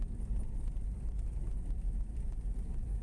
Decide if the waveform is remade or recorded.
remade